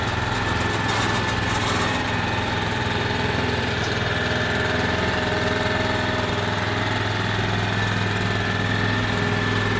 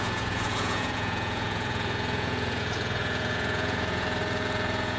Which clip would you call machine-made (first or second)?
second